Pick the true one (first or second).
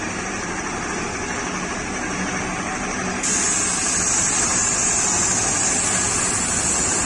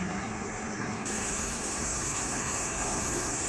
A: first